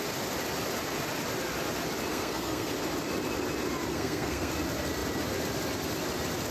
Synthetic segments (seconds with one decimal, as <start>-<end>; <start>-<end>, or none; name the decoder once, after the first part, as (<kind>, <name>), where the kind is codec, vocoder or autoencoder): 2.1-2.7 (codec, SNAC); 3.9-4.5

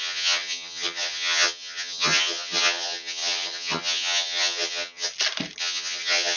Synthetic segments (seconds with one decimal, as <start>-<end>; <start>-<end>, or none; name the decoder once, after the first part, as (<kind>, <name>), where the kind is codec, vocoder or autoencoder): 0.0-5.1 (vocoder, HiFi-GAN); 5.6-6.4

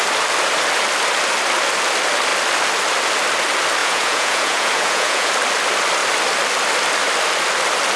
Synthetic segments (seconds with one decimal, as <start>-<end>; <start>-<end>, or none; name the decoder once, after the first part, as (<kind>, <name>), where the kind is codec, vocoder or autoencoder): 3.8-5.3 (vocoder, Vocos)

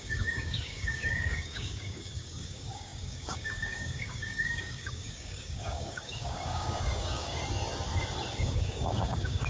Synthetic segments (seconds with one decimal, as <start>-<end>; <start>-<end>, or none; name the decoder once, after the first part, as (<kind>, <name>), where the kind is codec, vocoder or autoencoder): 0.0-7.4 (codec, DAC); 8.4-9.5

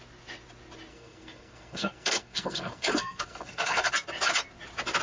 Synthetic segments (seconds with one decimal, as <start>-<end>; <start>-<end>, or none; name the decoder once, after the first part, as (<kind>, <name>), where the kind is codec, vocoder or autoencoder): 0.9-3.9 (codec, SNAC)

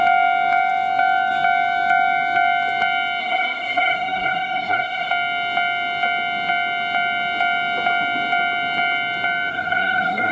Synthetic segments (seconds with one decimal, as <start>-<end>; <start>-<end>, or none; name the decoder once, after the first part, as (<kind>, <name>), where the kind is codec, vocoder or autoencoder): 3.2-5.1 (codec, SNAC); 9.5-10.3

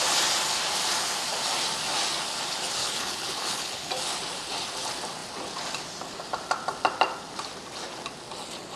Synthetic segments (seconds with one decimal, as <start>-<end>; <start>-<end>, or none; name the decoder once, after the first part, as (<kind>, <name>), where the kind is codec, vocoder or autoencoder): 2.8-3.9 (codec, HILCodec)